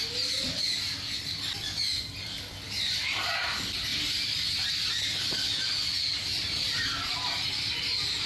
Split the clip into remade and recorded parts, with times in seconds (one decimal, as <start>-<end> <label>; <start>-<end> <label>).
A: 0.0-3.9 recorded; 3.9-4.7 remade; 4.7-8.3 recorded